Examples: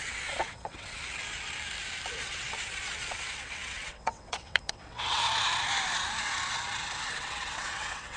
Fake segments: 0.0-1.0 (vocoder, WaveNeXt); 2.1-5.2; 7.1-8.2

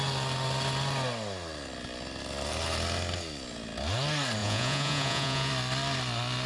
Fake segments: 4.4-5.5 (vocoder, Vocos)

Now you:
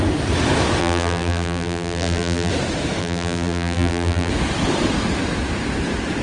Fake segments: 0.8-2.5 (vocoder, BigVGAN v2); 3.0-4.3

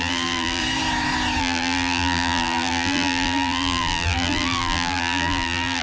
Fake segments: 0.0-0.6 (vocoder, BigVGAN v2); 1.4-5.8

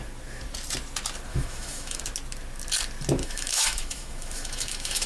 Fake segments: 1.3-2.0 (autoencoder, DAC-VAE); 3.2-5.1

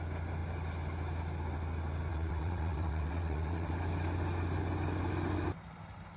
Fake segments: 2.1-3.7 (vocoder, WaveNeXt)

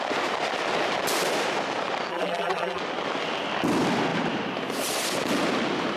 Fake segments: 2.1-2.8 (vocoder, BigVGAN v2)

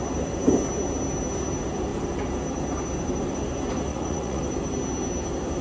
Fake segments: 3.9-4.4 (vocoder, Vocos)